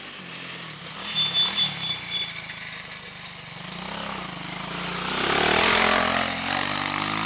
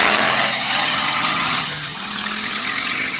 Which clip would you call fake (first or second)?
second